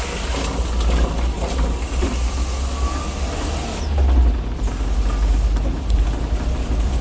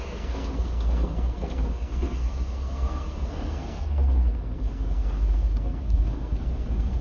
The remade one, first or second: second